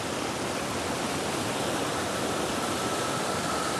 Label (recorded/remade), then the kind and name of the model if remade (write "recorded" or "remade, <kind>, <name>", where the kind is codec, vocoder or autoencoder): recorded